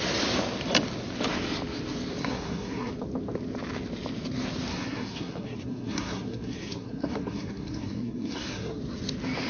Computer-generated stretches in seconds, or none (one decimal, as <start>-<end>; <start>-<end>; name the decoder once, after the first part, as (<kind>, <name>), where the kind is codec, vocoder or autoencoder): 2.2-2.9 (codec, SNAC); 4.7-8.8